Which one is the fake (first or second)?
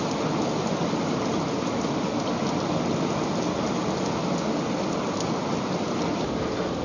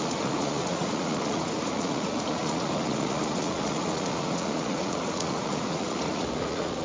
second